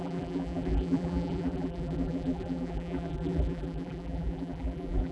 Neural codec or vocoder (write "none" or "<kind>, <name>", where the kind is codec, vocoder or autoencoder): vocoder, BigVGAN v2